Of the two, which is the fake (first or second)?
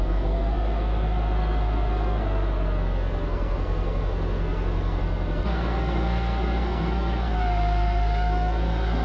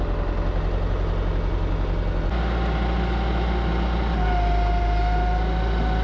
first